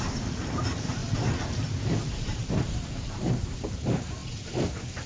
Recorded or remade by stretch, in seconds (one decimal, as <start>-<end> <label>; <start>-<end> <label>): 0.0-4.2 remade; 4.2-5.1 recorded